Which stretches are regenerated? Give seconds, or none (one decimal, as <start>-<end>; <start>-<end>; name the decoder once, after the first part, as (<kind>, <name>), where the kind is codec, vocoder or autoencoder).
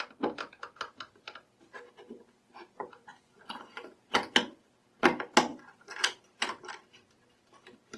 2.1-4.7 (vocoder, Vocos); 5.5-6.2